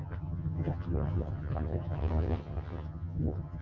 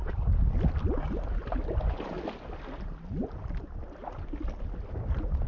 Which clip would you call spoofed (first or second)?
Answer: first